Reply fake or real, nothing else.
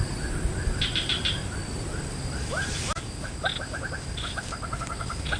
real